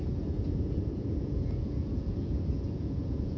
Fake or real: fake